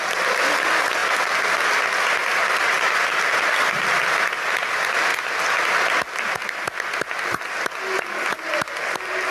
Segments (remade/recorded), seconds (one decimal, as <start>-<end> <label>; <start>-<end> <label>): 0.0-1.0 recorded; 1.0-1.6 remade; 1.6-2.2 recorded; 2.2-4.0 remade; 4.0-9.3 recorded